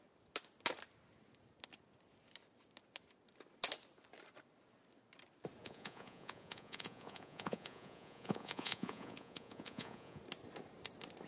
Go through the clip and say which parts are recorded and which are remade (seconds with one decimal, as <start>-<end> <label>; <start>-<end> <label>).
0.0-5.6 recorded; 5.6-10.2 remade; 10.2-11.3 recorded